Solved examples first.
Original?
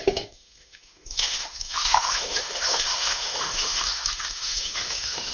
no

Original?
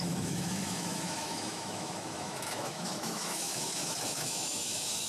no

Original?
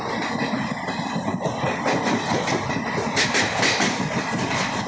yes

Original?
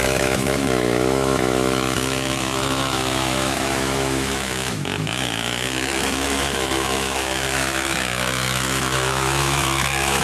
no